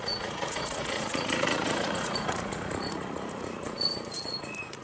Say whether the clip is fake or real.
fake